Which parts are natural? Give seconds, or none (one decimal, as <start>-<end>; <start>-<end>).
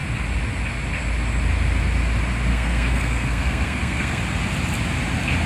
0.0-2.5; 4.2-5.5